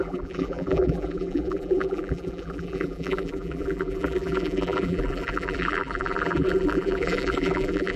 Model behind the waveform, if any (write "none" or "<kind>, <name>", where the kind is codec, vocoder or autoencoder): vocoder, BigVGAN v2